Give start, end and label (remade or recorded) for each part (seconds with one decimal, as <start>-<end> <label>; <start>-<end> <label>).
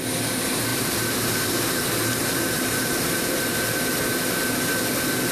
0.0-0.7 recorded; 0.7-3.4 remade; 3.4-5.3 recorded